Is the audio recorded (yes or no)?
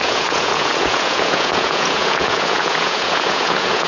no